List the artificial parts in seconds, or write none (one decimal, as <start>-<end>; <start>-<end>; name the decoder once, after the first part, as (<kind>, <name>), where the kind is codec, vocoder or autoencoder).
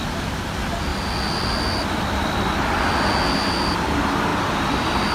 4.3-5.1 (vocoder, BigVGAN v2)